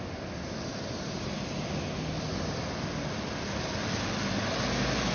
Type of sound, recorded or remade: recorded